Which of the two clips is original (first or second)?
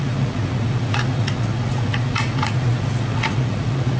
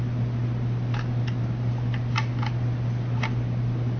second